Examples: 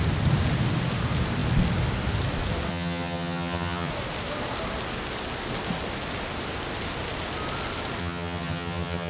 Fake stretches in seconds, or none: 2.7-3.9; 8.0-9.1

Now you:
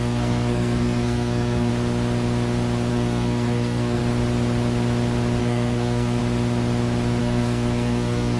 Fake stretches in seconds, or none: 0.0-1.7; 2.9-4.0; 5.4-6.2; 7.2-8.4